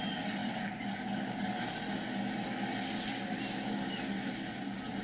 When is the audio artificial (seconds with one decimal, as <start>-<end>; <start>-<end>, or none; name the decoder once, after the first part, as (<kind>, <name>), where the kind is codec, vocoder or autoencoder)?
none